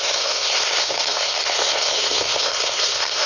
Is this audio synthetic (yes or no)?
yes